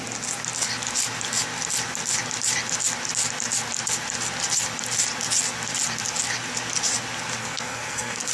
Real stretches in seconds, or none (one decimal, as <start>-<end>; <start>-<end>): 0.0-7.4

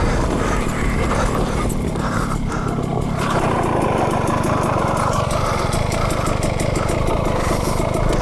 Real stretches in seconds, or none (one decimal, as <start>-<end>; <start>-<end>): 0.0-8.2

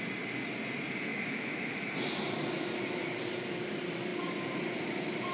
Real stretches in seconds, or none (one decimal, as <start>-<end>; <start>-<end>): 0.0-1.1; 1.9-5.3